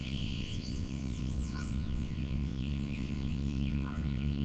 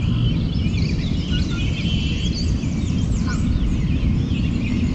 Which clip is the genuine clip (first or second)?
second